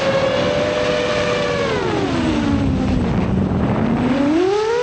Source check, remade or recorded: recorded